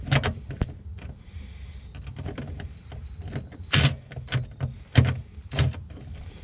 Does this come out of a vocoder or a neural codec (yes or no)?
no